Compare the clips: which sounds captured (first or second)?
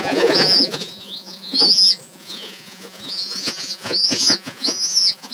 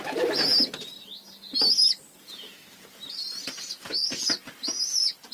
second